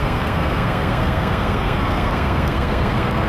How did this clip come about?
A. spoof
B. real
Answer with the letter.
A